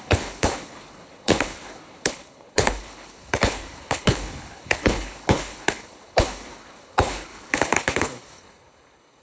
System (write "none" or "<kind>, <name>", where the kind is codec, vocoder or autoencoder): codec, HILCodec